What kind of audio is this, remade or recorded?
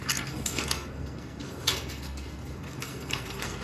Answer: remade